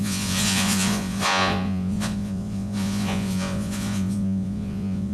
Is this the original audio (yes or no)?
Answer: no